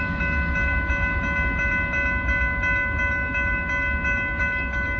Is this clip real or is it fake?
real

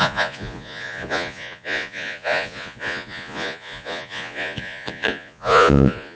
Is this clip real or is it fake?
fake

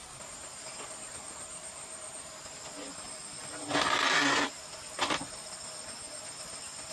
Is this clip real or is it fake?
real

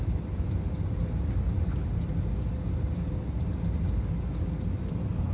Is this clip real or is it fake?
real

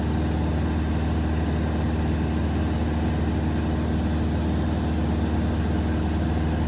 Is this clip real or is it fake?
real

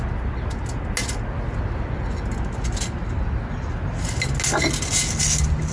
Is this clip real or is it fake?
real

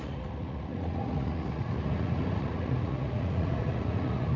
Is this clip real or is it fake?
fake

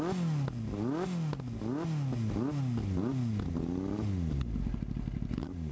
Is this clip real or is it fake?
real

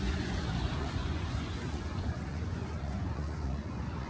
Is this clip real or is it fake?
fake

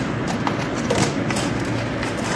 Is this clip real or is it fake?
real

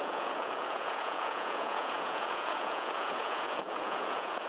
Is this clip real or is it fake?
fake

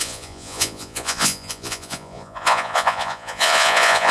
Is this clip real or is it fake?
fake